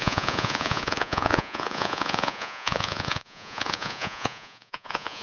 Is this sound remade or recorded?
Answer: remade